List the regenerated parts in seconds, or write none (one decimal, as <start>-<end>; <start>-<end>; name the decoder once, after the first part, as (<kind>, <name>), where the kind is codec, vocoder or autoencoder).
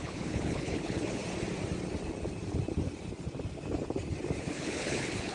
0.0-1.2 (codec, HILCodec); 4.4-5.3